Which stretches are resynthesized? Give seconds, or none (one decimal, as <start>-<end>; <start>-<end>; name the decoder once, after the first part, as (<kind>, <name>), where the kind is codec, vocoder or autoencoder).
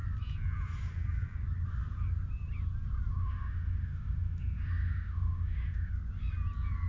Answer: 3.1-5.9 (autoencoder, DAC-VAE)